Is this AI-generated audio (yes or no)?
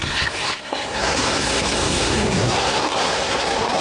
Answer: yes